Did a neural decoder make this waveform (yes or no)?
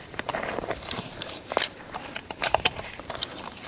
yes